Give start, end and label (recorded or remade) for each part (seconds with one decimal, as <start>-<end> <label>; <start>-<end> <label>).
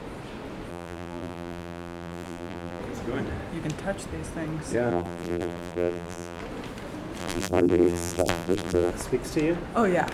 0.0-0.7 recorded; 0.7-2.8 remade; 2.8-4.9 recorded; 4.9-6.4 remade; 6.4-7.2 recorded; 7.2-8.9 remade; 8.9-10.1 recorded